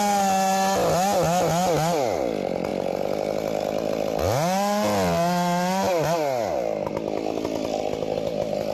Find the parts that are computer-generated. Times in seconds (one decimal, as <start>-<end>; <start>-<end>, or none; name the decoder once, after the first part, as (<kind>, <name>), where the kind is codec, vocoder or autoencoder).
none